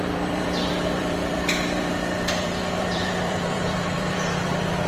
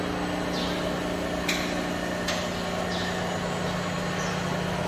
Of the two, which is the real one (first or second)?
second